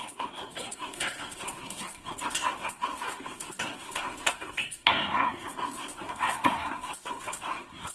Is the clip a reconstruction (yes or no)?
yes